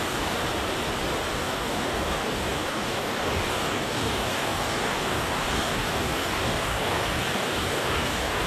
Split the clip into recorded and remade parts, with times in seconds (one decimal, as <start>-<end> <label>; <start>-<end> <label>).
0.0-0.4 remade; 0.4-1.3 recorded; 1.3-8.5 remade